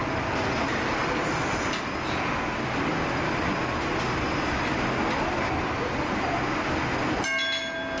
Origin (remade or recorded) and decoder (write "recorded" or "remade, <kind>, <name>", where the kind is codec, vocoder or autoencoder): recorded